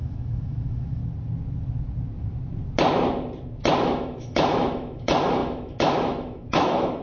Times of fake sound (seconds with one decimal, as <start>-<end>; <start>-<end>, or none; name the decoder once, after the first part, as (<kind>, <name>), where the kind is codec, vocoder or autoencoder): 0.0-1.0 (autoencoder, DAC-VAE); 3.8-7.0